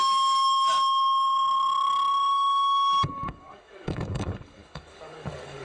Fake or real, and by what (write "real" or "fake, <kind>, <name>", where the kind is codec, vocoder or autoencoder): fake, codec, DAC